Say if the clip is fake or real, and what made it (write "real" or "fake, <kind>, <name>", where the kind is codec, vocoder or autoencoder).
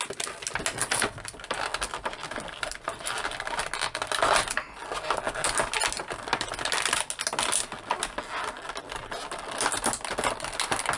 real